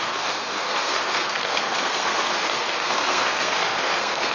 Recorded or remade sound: remade